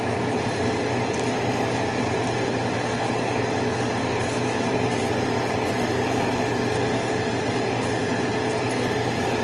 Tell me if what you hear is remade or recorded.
recorded